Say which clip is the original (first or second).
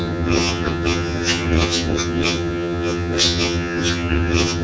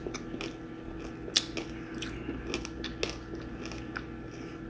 second